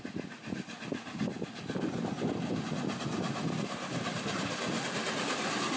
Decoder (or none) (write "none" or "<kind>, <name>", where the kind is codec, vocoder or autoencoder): vocoder, BigVGAN v2